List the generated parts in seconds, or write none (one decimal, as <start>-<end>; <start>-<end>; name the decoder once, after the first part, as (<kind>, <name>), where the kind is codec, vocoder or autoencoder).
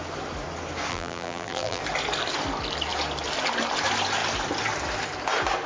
0.9-1.8 (vocoder, BigVGAN v2)